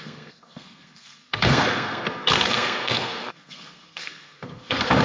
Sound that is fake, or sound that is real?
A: fake